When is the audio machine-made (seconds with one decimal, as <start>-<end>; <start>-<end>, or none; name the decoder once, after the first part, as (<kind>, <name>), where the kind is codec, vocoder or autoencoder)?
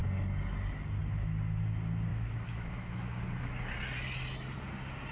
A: 2.1-3.2 (autoencoder, DAC-VAE)